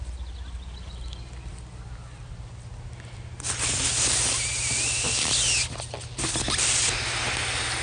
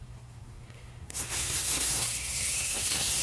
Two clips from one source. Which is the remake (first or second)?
second